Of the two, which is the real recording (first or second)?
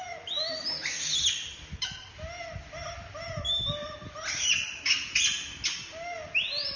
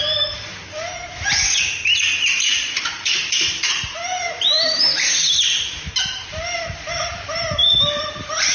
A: first